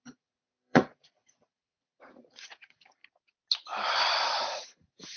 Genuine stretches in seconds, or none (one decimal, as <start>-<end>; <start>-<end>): 3.0-4.3